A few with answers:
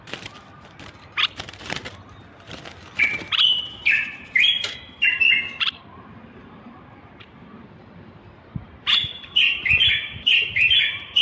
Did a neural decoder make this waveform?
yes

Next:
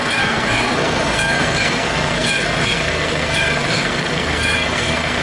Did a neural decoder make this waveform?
yes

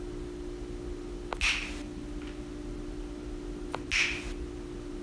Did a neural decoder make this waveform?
no